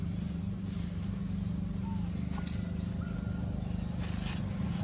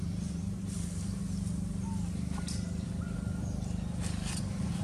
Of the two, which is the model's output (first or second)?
second